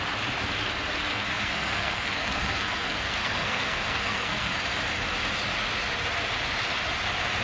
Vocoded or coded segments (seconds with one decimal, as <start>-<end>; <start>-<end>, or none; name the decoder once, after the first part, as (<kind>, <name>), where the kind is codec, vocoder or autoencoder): 1.1-4.5 (codec, SNAC)